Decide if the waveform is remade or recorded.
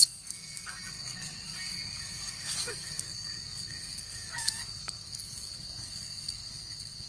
remade